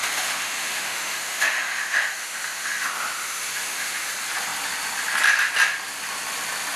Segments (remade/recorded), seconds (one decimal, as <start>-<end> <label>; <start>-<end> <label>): 0.0-4.1 remade; 4.1-6.8 recorded